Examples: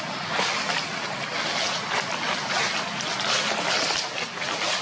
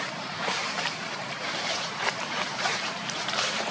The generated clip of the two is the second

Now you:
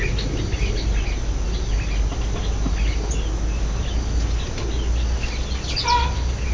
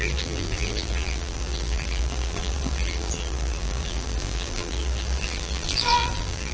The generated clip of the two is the second